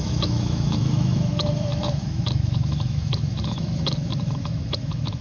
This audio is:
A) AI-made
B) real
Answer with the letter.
A